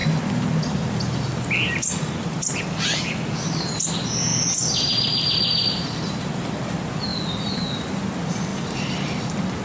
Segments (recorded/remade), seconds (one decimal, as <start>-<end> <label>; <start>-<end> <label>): 0.0-2.1 remade; 2.1-4.3 recorded; 4.3-6.5 remade; 6.5-7.1 recorded; 7.1-8.1 remade; 8.1-8.5 recorded; 8.5-9.2 remade; 9.2-9.6 recorded